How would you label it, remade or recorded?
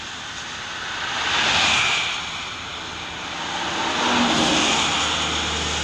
recorded